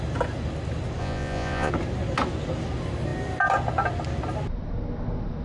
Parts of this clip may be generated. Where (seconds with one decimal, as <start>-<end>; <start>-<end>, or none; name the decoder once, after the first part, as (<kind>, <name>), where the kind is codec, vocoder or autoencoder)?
1.0-1.7 (vocoder, Vocos)

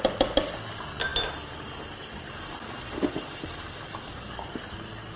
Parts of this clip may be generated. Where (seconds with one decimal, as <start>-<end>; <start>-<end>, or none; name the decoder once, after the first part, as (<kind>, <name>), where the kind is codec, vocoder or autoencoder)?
none

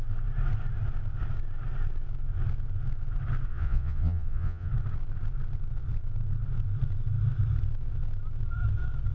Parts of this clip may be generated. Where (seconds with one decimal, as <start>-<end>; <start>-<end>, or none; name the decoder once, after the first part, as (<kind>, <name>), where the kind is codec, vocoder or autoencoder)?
3.5-4.7 (vocoder, Vocos)

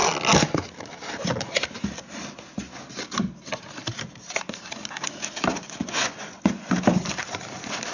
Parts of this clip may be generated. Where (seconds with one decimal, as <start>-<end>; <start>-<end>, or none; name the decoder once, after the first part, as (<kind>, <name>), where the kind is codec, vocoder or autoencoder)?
5.5-6.7 (vocoder, Vocos)

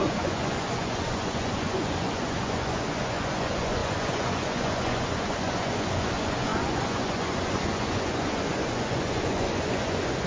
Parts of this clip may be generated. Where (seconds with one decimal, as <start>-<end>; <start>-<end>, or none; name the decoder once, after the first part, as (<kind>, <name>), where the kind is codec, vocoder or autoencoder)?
0.0-10.3 (vocoder, Vocos)

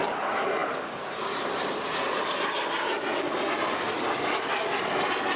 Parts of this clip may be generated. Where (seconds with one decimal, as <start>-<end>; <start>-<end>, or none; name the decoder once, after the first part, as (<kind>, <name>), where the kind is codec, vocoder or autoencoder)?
none

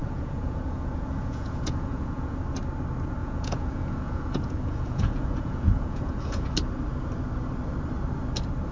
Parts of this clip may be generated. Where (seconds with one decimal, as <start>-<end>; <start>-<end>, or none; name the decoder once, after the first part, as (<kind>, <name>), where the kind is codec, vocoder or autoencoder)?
0.0-2.4 (vocoder, Vocos); 3.2-6.5

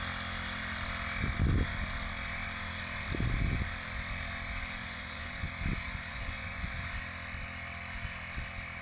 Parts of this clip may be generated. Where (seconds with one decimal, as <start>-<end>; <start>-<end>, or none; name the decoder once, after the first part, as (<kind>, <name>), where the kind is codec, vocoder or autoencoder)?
4.8-5.5 (vocoder, Vocos); 6.1-6.8